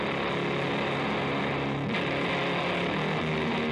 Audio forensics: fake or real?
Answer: real